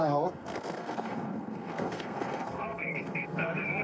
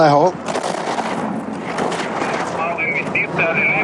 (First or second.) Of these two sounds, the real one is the second